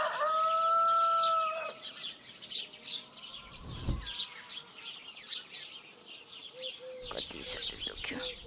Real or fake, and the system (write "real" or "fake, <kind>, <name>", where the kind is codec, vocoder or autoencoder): real